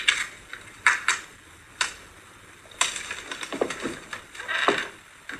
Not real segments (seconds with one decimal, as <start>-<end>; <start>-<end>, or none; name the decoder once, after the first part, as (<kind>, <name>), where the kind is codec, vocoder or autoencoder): none